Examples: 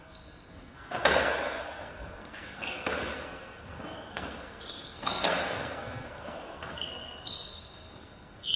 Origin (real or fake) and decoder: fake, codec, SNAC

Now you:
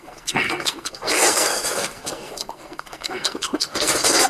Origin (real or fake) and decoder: fake, codec, SNAC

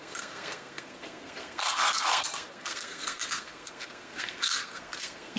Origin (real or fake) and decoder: fake, codec, SNAC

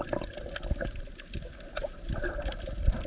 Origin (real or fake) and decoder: real